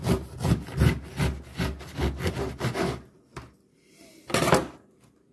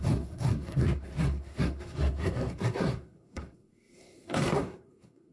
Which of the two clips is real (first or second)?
first